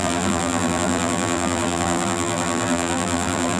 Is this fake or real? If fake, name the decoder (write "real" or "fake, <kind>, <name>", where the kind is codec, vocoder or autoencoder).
fake, vocoder, BigVGAN v2